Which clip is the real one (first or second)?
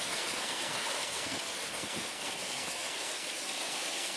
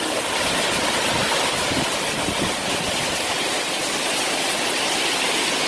second